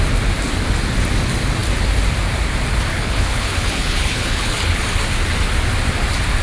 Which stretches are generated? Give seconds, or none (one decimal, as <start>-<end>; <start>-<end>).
2.9-4.8